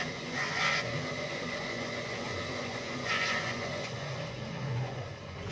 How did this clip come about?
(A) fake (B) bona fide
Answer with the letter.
A